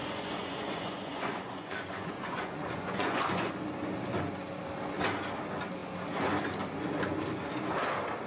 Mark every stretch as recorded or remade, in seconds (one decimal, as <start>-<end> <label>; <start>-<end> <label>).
0.0-3.5 remade; 3.5-8.3 recorded